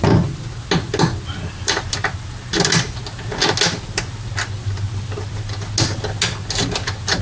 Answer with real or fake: real